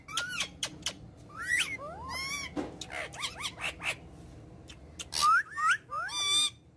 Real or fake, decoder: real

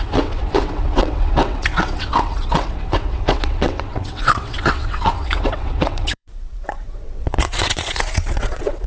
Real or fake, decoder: fake, vocoder, WaveNeXt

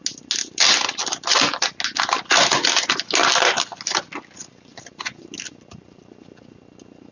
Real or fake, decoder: real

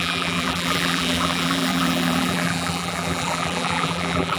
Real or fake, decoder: fake, vocoder, BigVGAN v2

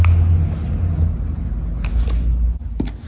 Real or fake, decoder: real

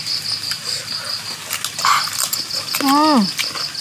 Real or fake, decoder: real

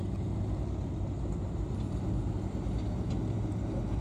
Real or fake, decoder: real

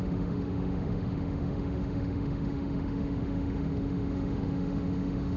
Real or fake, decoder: fake, autoencoder, DAC-VAE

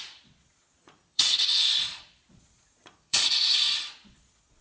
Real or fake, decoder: fake, vocoder, Vocos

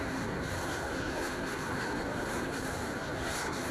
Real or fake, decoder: fake, codec, SNAC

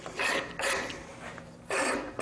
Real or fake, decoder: real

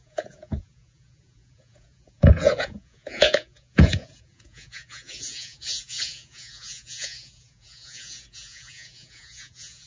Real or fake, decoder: fake, vocoder, Vocos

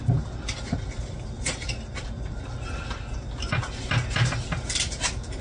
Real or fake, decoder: real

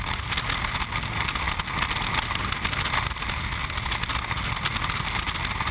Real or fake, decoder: real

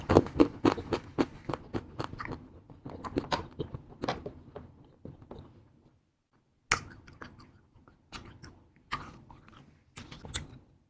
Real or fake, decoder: real